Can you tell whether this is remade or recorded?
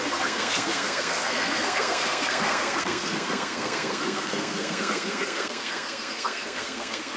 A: remade